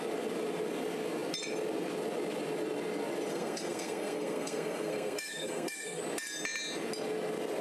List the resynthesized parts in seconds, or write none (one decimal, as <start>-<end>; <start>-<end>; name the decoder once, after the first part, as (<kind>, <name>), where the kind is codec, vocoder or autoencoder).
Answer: 3.3-6.0 (codec, SNAC)